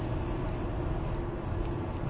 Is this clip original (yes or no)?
yes